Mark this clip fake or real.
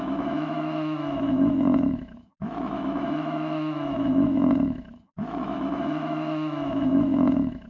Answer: fake